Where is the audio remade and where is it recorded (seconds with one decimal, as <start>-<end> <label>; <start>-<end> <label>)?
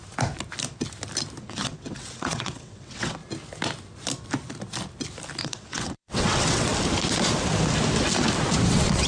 0.0-1.4 recorded; 1.4-3.2 remade; 3.2-5.4 recorded; 5.4-6.7 remade; 6.7-8.7 recorded; 8.7-9.1 remade